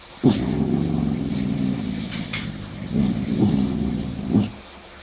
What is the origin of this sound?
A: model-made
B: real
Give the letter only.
A